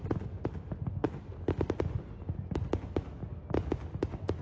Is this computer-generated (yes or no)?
no